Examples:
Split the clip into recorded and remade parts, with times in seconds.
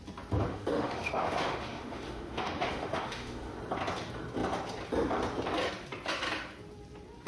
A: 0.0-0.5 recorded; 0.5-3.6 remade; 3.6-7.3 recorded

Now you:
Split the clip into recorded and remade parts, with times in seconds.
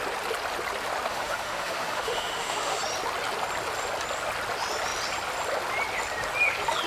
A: 0.0-1.1 recorded; 1.1-2.8 remade; 2.8-6.9 recorded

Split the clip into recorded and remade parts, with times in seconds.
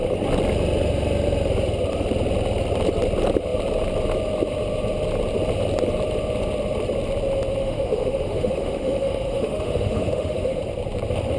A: 0.0-7.6 recorded; 7.6-10.6 remade; 10.6-11.4 recorded